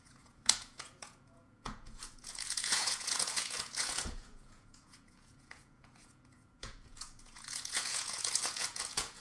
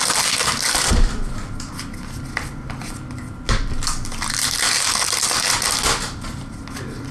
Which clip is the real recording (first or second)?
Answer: second